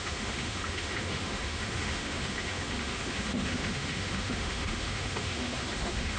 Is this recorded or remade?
remade